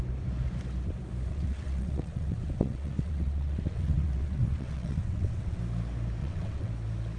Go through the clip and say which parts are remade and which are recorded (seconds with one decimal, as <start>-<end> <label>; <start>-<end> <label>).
0.0-1.3 recorded; 1.3-5.6 remade; 5.6-6.2 recorded; 6.2-6.7 remade; 6.7-7.2 recorded